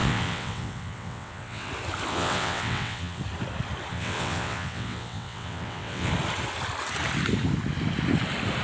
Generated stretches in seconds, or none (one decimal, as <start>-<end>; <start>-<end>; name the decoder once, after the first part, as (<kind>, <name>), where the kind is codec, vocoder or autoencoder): 0.0-1.7 (vocoder, WaveNeXt); 2.1-3.2; 3.9-6.1